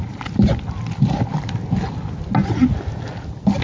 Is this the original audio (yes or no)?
yes